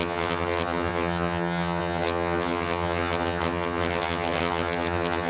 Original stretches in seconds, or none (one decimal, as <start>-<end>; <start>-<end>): none